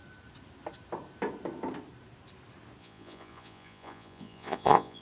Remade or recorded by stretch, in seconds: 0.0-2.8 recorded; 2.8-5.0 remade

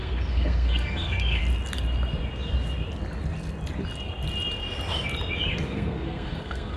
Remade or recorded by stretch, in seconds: 0.0-1.4 remade; 1.4-5.5 recorded; 5.5-6.8 remade

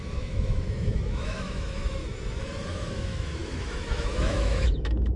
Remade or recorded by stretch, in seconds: 0.0-2.0 remade; 2.0-2.7 recorded; 2.7-5.2 remade

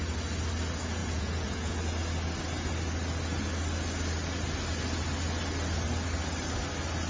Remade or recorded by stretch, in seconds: 0.0-1.0 recorded; 1.0-1.7 remade; 1.7-7.1 recorded

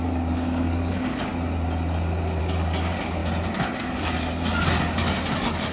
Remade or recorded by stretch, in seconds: 0.0-1.3 remade; 1.3-2.4 recorded; 2.4-3.2 remade; 3.2-3.8 recorded; 3.8-5.7 remade

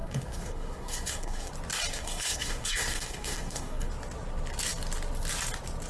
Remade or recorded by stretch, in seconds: 0.0-1.5 remade; 1.5-1.9 recorded; 1.9-3.9 remade; 3.9-5.9 recorded